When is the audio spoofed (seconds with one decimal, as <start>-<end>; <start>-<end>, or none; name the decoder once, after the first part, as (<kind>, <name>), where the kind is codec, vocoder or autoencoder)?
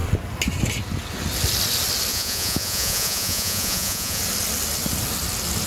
2.1-4.2 (vocoder, Vocos)